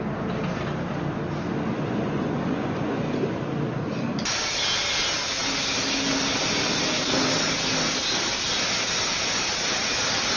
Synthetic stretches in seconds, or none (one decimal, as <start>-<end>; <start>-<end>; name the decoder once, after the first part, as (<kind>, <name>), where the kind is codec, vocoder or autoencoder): 1.7-3.2 (vocoder, Vocos)